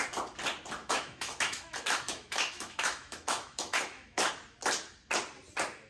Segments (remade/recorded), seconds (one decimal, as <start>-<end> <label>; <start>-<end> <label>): 0.0-0.8 recorded; 0.8-4.3 remade; 4.3-5.9 recorded